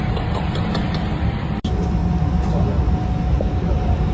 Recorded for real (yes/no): no